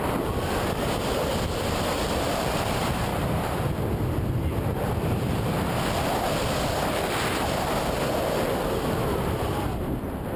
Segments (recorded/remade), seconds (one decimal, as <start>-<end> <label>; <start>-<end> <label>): 0.0-1.3 recorded; 1.3-2.0 remade; 2.0-3.1 recorded; 3.1-5.5 remade; 5.5-10.4 recorded